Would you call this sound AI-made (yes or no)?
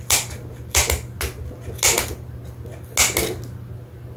no